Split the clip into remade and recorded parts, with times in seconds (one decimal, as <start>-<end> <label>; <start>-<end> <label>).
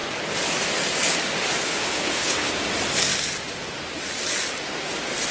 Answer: 0.0-1.6 recorded; 1.6-2.5 remade; 2.5-5.3 recorded